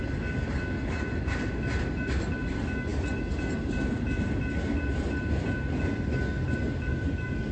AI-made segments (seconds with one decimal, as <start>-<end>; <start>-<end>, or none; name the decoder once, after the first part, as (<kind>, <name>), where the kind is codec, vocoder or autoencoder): none